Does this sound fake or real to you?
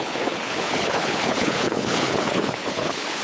fake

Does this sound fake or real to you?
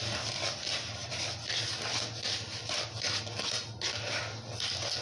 real